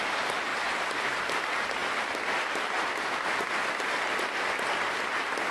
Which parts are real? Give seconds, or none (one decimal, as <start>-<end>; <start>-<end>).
0.0-1.8; 5.0-5.5